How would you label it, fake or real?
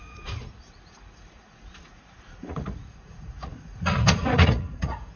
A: fake